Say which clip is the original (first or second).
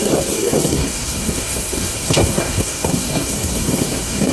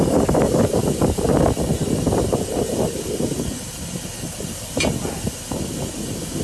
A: second